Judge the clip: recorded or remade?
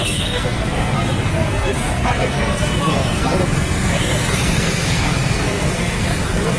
remade